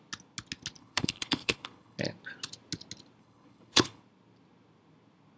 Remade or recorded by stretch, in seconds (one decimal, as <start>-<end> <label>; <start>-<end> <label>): 0.0-0.8 recorded; 0.8-2.0 remade; 2.0-3.2 recorded; 3.2-4.0 remade; 4.0-5.4 recorded